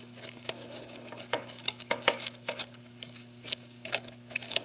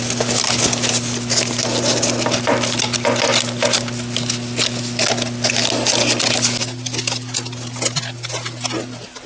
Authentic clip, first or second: second